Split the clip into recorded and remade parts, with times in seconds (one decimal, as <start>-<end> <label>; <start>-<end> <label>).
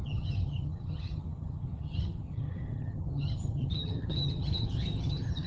0.0-5.5 remade